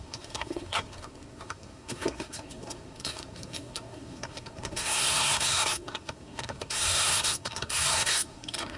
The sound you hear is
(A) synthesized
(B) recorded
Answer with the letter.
A